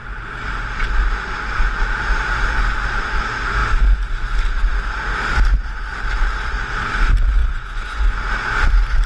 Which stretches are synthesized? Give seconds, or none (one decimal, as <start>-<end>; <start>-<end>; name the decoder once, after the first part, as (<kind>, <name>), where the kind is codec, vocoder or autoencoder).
7.4-8.2 (vocoder, Vocos)